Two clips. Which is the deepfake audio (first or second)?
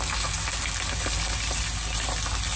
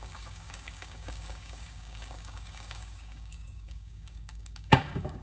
second